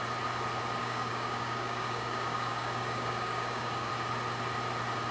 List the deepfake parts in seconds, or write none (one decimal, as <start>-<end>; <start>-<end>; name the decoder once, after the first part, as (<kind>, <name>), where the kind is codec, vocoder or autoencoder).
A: 0.8-3.9 (codec, DAC)